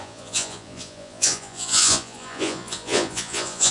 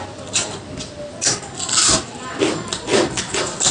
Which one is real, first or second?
second